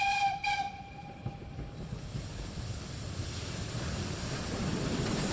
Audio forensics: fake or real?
fake